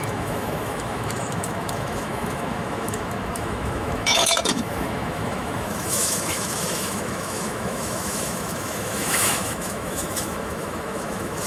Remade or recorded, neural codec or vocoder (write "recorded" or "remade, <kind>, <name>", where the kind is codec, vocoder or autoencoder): remade, autoencoder, DAC-VAE